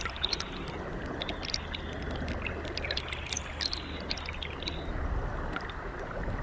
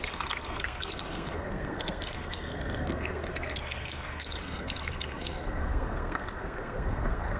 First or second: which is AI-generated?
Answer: second